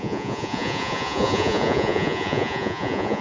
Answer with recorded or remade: remade